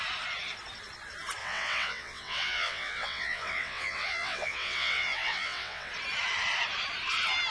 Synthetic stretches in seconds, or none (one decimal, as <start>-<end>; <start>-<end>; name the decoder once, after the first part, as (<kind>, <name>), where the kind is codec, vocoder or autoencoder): 1.4-5.9 (vocoder, WaveNeXt)